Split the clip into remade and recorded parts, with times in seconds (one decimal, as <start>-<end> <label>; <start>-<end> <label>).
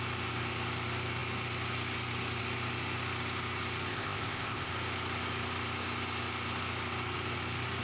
0.0-3.9 recorded; 3.9-4.7 remade; 4.7-7.8 recorded